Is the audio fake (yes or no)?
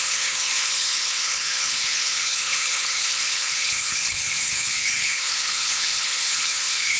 yes